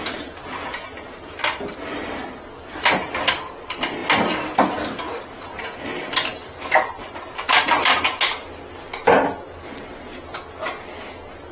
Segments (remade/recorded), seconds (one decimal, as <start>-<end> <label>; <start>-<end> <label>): 0.0-11.5 recorded